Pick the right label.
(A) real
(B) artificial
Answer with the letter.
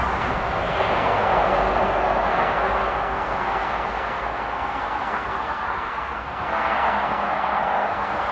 B